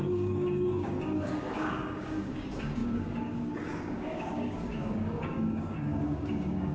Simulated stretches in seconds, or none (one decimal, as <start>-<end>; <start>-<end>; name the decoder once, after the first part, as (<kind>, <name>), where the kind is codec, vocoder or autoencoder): 0.0-6.7 (codec, DAC)